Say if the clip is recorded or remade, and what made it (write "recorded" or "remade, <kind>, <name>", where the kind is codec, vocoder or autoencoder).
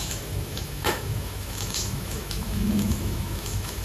remade, autoencoder, DAC-VAE